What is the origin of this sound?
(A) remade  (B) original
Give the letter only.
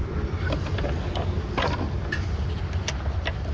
B